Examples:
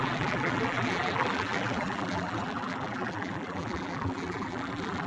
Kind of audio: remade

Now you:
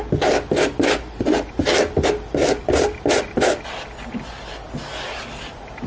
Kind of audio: recorded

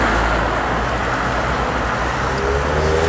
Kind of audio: recorded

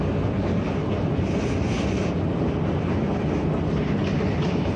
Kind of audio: recorded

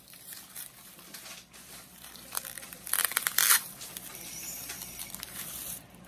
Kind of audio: remade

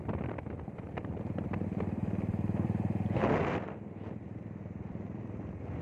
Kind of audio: remade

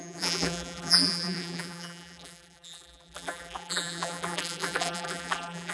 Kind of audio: remade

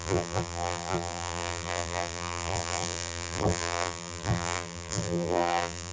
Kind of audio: remade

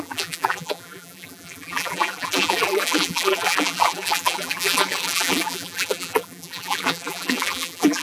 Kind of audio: remade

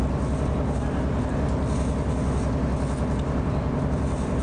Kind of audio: recorded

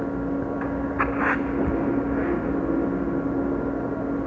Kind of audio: recorded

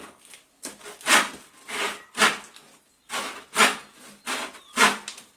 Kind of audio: recorded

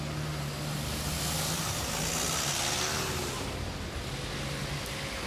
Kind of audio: recorded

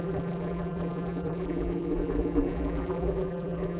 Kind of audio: remade